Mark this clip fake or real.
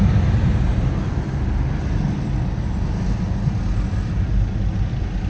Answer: real